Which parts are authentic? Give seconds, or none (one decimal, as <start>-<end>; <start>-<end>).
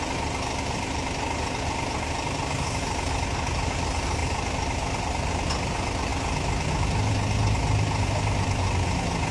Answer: 0.0-9.3